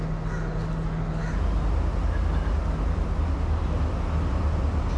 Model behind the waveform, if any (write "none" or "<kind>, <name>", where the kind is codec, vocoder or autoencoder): none